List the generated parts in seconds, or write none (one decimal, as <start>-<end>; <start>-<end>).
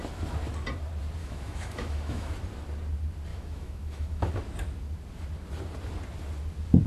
1.2-2.3; 3.3-4.3